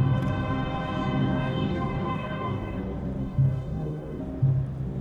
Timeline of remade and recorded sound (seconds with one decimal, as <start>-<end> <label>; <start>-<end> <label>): 0.0-1.2 recorded; 1.2-2.8 remade; 2.8-3.2 recorded; 3.2-4.2 remade; 4.2-5.0 recorded